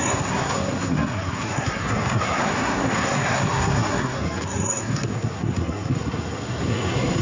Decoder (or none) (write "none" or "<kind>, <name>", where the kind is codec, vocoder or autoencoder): codec, SNAC